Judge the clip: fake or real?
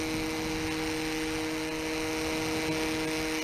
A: real